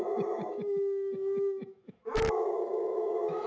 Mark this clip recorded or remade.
remade